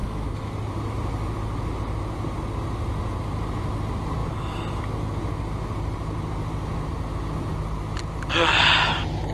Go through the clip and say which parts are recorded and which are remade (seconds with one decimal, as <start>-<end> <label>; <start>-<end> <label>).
0.0-0.5 remade; 0.5-9.3 recorded